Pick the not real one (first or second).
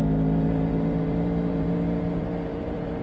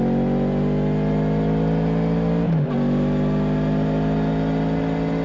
first